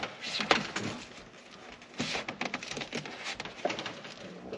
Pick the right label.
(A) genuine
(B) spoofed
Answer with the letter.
A